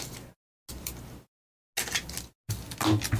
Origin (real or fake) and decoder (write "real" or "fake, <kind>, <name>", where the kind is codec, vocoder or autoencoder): real